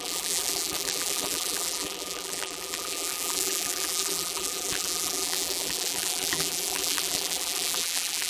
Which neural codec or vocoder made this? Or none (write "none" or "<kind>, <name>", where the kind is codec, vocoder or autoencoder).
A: vocoder, BigVGAN v2